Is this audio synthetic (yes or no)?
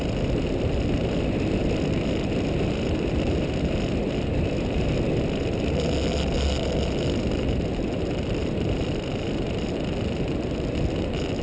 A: no